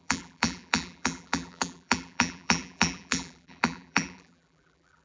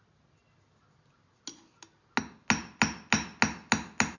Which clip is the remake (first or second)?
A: first